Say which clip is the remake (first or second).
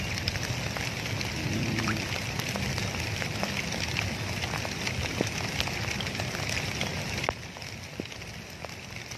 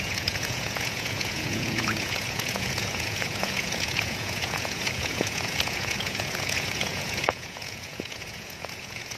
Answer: second